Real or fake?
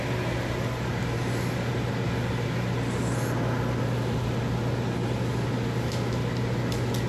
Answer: real